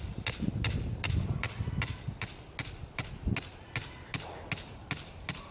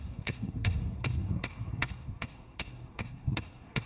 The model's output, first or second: second